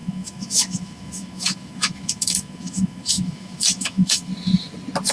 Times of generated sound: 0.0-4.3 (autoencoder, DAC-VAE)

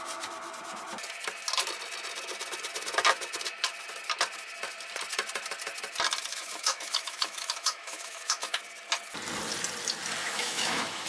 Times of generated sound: 6.3-8.6 (autoencoder, DAC-VAE); 10.2-11.1

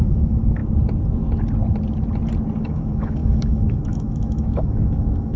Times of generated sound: 0.0-0.6 (autoencoder, DAC-VAE); 2.6-5.4

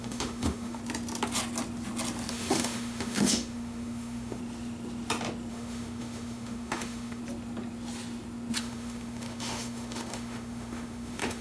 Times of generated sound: 0.0-0.8 (autoencoder, DAC-VAE); 2.3-4.4; 5.5-7.2; 8.6-11.4

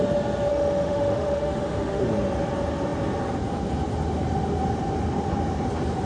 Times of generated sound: 0.5-2.0 (autoencoder, DAC-VAE)

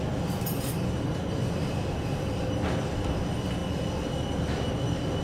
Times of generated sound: none